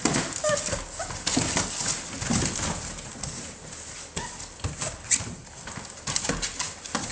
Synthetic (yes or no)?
no